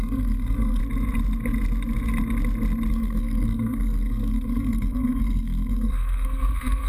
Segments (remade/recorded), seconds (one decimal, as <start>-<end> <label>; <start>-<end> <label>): 0.0-0.8 remade; 0.8-2.9 recorded; 2.9-6.9 remade